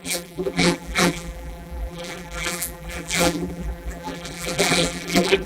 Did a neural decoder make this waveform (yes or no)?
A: yes